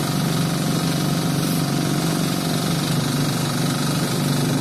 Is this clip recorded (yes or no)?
yes